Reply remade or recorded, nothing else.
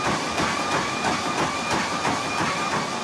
recorded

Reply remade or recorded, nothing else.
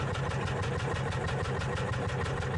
recorded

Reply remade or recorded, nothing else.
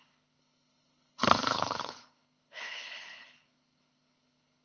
remade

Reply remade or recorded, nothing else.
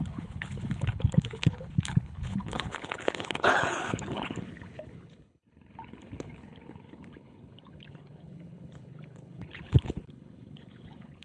remade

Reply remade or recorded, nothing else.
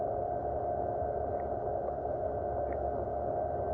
recorded